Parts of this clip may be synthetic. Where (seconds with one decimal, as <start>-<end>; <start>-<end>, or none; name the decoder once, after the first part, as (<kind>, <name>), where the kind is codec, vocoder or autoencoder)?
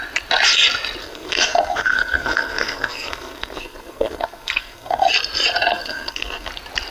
1.0-5.1 (codec, SNAC); 5.7-6.5